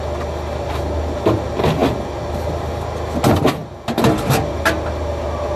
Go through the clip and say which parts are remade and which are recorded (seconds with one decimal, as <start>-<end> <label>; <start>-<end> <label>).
0.0-5.6 recorded